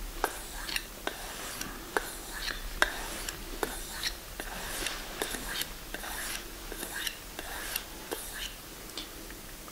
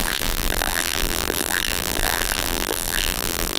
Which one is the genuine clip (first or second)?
first